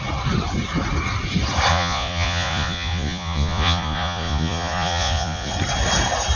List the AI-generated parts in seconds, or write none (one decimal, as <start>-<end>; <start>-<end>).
1.7-5.5